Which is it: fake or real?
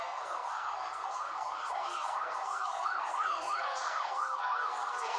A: fake